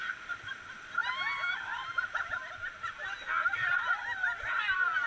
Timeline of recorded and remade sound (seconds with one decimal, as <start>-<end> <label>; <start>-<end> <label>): 0.0-5.1 recorded